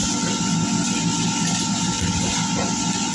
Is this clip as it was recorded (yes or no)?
yes